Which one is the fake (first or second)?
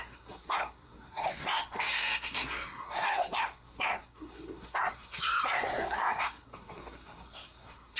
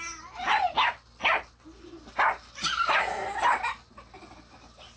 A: first